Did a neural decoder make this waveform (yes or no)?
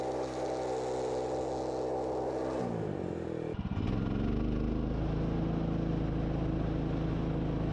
no